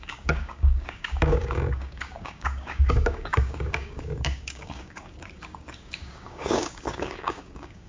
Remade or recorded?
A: remade